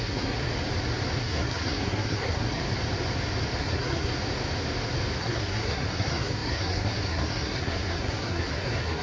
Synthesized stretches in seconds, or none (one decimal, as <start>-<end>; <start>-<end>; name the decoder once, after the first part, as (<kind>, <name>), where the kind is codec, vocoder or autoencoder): 0.0-0.5 (codec, SNAC); 1.2-2.6; 3.6-4.1; 5.2-9.0